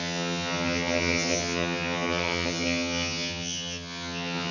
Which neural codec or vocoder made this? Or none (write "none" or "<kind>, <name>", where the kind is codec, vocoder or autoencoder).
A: vocoder, HiFi-GAN